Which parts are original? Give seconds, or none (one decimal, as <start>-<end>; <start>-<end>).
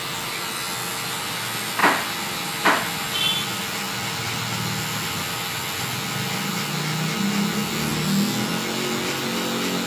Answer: 0.0-9.9